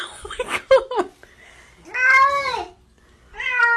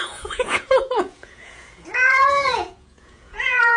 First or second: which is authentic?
first